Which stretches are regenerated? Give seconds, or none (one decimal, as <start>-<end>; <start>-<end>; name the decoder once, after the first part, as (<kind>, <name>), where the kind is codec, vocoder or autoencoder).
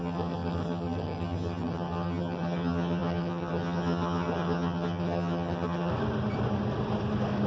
0.0-5.9 (vocoder, HiFi-GAN)